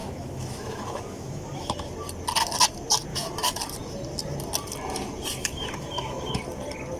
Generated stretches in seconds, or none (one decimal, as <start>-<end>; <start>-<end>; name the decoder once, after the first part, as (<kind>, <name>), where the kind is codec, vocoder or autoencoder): 0.0-1.9 (autoencoder, DAC-VAE); 3.1-3.6; 5.4-6.3